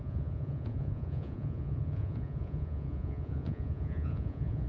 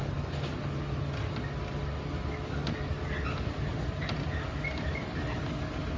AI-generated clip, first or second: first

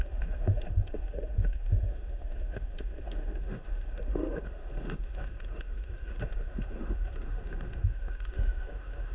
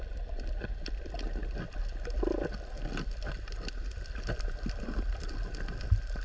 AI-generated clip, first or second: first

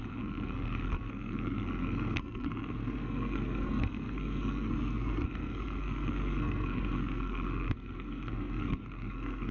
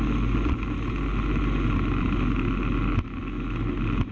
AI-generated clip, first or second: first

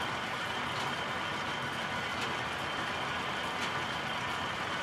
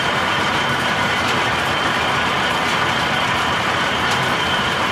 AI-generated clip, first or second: second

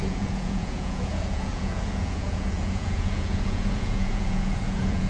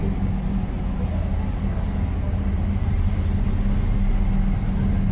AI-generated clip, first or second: first